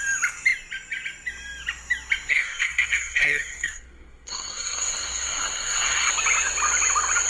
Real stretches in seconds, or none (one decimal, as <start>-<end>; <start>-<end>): 0.0-2.3; 6.1-7.3